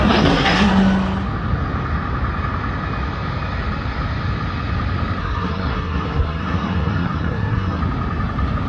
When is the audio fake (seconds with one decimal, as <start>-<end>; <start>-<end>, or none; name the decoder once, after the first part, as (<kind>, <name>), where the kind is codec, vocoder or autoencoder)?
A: 0.0-0.7 (codec, SNAC); 5.2-7.8

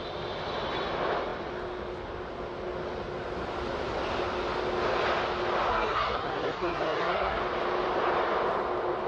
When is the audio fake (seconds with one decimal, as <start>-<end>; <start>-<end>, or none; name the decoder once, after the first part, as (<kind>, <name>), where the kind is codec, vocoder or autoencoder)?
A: 5.7-7.4 (codec, SNAC)

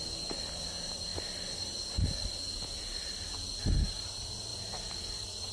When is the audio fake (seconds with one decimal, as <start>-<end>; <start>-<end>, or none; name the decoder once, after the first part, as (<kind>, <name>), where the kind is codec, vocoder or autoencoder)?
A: none

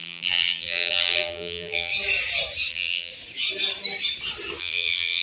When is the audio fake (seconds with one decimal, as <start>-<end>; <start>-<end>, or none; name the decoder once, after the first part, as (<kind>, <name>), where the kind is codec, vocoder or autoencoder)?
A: 0.0-1.9 (vocoder, BigVGAN v2); 2.7-3.1; 4.6-5.2